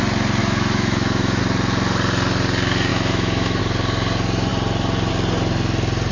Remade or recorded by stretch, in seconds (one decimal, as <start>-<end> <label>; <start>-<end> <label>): 0.0-0.4 recorded; 0.4-1.4 remade; 1.4-2.9 recorded; 2.9-3.6 remade; 3.6-6.1 recorded